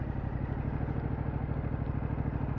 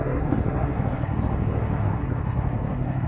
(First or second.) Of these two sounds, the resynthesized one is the second